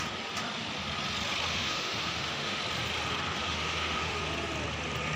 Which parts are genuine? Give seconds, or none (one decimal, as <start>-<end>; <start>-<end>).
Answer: 0.0-1.5; 2.6-3.4; 4.2-5.2